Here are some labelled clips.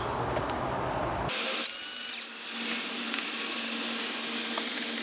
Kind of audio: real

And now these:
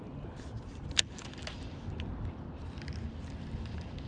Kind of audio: real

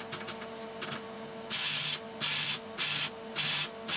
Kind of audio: real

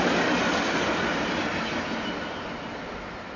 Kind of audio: real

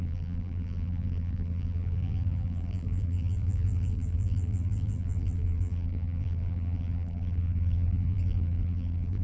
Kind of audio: fake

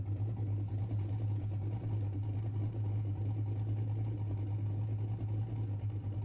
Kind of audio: real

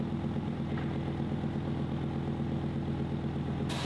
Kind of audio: real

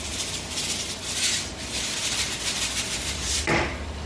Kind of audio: fake